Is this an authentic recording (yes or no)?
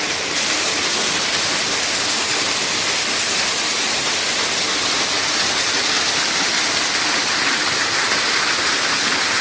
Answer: yes